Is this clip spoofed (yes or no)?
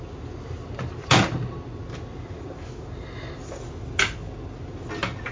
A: no